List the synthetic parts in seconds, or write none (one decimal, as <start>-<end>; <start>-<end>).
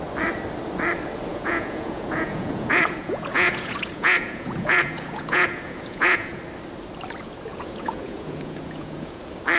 1.3-6.4; 7.5-9.2